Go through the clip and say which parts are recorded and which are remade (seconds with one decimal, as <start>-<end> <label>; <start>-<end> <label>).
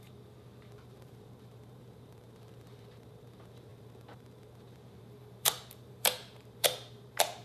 0.0-7.4 remade